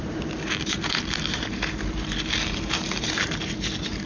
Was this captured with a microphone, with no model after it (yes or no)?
no